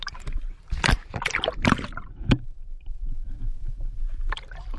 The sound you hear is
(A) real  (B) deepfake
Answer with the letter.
B